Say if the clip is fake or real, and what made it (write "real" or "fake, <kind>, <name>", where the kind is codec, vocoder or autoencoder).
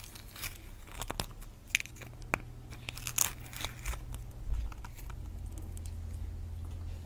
real